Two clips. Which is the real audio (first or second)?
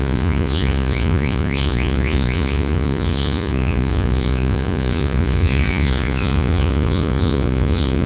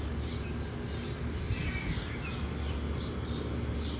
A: second